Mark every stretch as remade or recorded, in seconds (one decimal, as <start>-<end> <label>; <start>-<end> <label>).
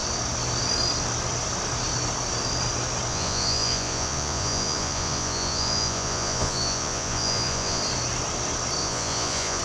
0.0-3.1 recorded; 3.1-7.8 remade; 7.8-8.8 recorded; 8.8-9.6 remade